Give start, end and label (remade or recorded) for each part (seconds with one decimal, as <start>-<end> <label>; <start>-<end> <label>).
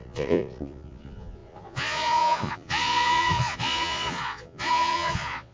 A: 0.0-5.5 remade